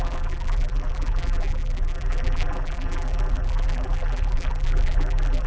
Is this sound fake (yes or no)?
yes